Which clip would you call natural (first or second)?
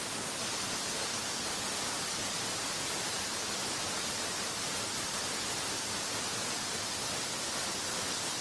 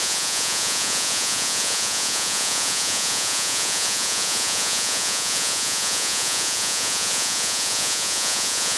first